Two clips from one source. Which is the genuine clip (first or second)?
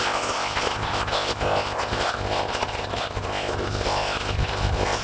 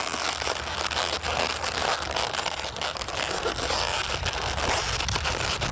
second